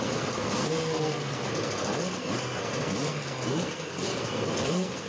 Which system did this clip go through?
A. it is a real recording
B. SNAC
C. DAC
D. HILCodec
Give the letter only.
B